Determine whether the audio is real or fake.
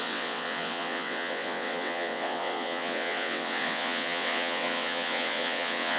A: fake